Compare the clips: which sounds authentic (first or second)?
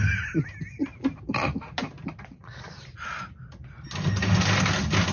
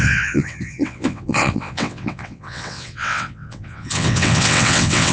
first